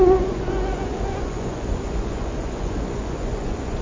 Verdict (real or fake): fake